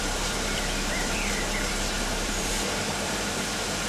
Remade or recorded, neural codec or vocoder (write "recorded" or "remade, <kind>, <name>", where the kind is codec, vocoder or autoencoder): remade, vocoder, BigVGAN v2